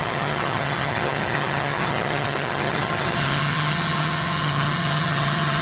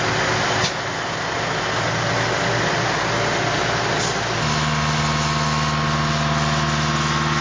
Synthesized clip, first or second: first